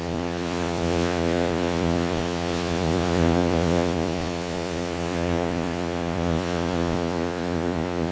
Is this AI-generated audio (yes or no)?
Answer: yes